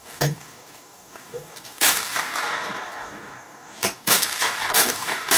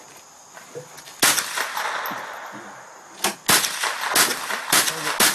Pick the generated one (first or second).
first